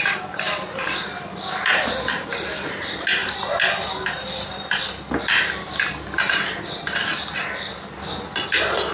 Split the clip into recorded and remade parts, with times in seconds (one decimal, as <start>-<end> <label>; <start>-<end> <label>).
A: 0.0-8.9 recorded